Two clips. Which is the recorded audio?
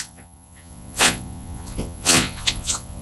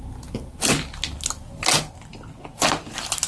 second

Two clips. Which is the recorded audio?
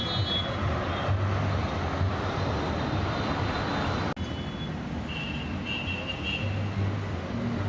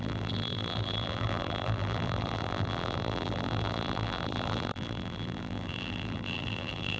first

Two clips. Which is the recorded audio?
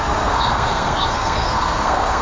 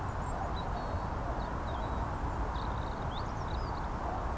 second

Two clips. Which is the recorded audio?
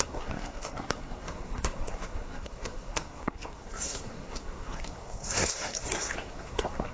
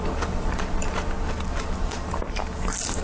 second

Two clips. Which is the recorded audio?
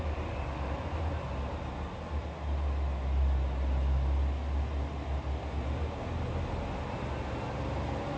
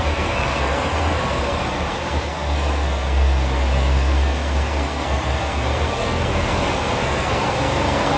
first